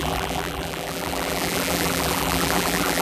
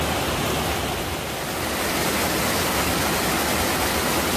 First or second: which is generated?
first